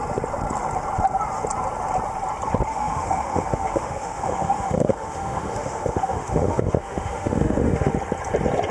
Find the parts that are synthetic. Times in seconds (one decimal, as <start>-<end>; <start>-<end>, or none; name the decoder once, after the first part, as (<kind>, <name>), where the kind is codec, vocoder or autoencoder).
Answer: 2.7-7.9 (autoencoder, DAC-VAE)